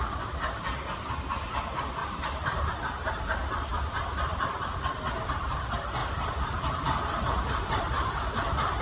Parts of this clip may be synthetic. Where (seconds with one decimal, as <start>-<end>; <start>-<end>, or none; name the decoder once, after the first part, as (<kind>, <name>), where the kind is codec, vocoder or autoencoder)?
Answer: 2.0-2.7 (vocoder, BigVGAN v2); 6.0-7.1